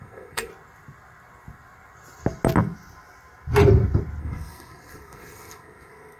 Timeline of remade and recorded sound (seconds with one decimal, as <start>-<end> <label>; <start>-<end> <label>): 0.0-0.5 remade; 0.5-4.2 recorded; 4.2-6.2 remade